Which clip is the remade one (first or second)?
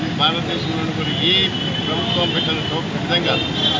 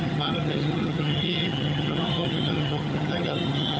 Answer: second